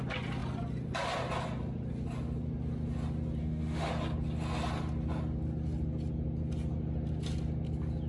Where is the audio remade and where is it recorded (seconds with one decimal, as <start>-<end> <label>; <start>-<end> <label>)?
0.0-3.4 recorded; 3.4-3.9 remade; 3.9-8.1 recorded